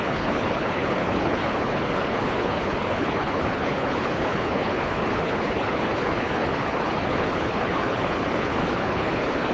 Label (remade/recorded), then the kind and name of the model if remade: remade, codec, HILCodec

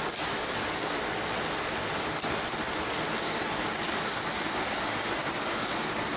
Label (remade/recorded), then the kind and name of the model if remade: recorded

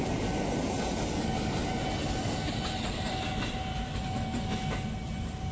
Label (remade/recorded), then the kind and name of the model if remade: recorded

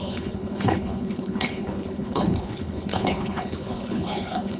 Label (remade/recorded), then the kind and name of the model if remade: remade, codec, HILCodec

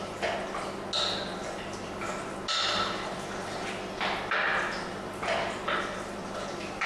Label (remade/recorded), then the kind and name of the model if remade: recorded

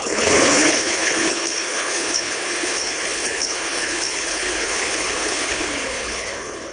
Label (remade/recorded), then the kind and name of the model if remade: remade, codec, HILCodec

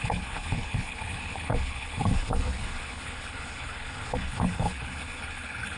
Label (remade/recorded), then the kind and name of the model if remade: remade, codec, HILCodec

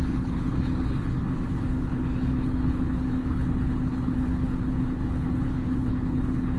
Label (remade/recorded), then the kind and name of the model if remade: remade, codec, HILCodec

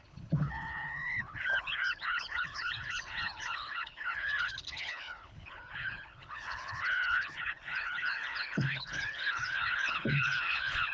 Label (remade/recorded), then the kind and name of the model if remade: remade, codec, HILCodec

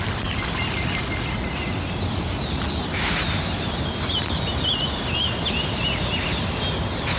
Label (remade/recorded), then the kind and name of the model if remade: recorded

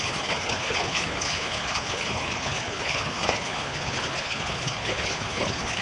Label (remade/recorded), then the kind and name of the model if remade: remade, codec, HILCodec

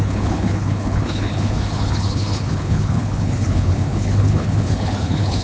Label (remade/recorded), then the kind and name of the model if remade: remade, codec, HILCodec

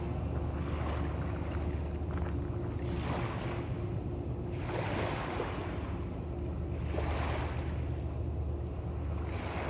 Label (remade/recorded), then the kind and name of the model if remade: recorded